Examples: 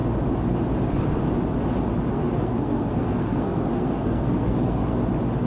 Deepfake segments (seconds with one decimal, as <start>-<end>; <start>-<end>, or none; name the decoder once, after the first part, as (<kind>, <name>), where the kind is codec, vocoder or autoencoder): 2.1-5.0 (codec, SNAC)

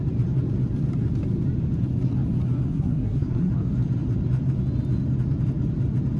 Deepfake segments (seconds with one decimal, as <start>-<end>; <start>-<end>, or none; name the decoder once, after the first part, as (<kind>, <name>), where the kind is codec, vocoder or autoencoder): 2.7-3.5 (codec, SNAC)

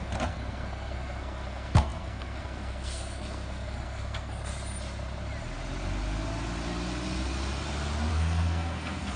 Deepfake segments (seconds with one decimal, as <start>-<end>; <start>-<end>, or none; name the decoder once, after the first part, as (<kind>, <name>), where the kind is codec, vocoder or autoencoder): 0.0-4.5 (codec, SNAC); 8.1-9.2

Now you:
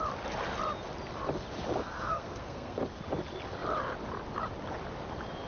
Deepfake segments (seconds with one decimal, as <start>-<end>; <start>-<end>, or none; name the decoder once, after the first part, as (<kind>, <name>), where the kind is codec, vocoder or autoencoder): 1.8-2.8 (codec, SNAC)